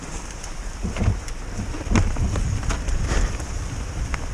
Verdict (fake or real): real